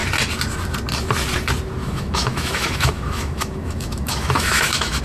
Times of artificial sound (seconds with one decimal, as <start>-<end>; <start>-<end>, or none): 1.8-5.0